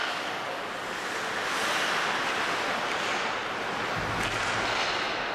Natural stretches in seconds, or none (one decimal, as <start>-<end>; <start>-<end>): 0.6-5.3